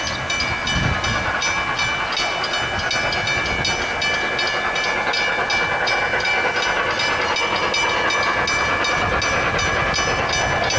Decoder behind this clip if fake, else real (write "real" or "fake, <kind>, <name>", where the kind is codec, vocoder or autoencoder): real